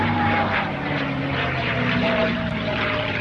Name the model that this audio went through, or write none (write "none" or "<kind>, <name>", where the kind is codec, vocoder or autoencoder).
vocoder, BigVGAN v2